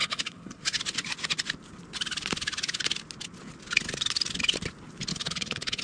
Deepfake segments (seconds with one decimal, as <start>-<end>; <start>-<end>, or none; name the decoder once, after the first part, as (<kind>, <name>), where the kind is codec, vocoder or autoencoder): 0.0-0.8 (codec, HILCodec); 5.1-5.8

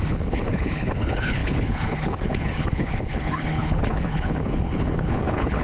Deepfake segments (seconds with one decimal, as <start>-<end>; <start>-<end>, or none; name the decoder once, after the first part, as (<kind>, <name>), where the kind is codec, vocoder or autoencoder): 0.0-5.6 (codec, HILCodec)

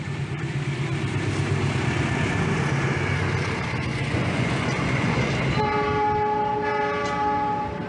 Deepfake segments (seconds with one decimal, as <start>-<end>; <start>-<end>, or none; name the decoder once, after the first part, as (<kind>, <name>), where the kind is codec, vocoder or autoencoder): 3.9-5.3 (vocoder, Vocos)

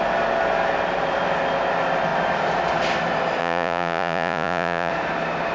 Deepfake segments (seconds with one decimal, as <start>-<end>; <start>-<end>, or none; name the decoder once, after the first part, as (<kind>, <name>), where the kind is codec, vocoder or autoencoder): 3.4-4.9 (vocoder, Vocos)

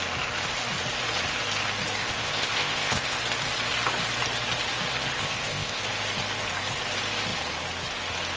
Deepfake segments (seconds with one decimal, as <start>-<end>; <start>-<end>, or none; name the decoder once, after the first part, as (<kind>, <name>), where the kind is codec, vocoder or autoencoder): 2.0-3.2 (codec, ZipCodec); 5.2-5.8

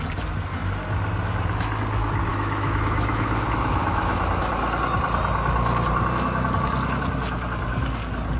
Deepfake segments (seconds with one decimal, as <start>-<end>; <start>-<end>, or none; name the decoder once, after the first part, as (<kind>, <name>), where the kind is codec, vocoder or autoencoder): 2.3-4.5 (autoencoder, DAC-VAE)